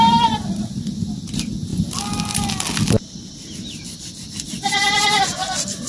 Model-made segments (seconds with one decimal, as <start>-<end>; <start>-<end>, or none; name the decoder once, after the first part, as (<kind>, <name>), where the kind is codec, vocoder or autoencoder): none